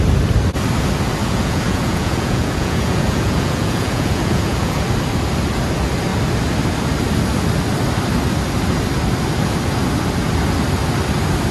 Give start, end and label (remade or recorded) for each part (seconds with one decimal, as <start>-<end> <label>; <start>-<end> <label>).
0.0-1.2 recorded; 1.2-4.8 remade; 4.8-11.5 recorded